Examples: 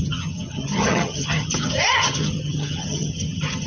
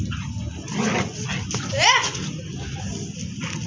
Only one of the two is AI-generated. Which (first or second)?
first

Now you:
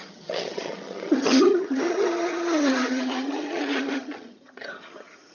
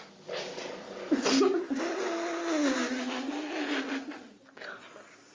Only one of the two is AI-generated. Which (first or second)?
first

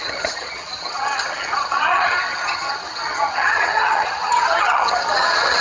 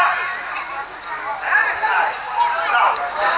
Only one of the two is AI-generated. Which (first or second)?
first